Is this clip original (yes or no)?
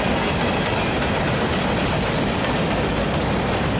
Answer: yes